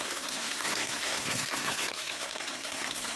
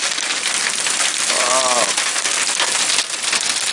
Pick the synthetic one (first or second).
first